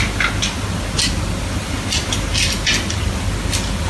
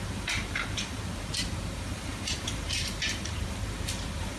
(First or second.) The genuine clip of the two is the first